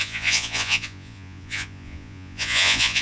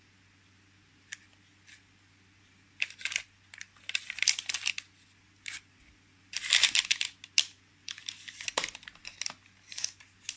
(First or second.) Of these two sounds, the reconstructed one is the first